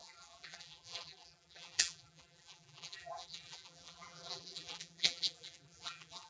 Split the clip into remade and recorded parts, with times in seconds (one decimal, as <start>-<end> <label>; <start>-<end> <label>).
0.0-6.3 remade